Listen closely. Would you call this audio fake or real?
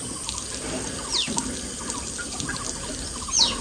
real